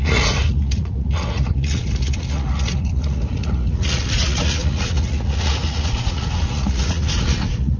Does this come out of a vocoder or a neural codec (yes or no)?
yes